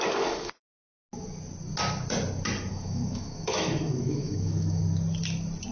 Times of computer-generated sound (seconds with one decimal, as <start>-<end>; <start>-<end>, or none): 0.0-0.9; 2.7-4.8